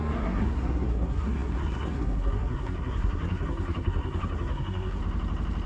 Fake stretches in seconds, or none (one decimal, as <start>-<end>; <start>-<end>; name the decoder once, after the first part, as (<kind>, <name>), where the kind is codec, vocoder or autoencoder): 0.0-5.0 (codec, SNAC)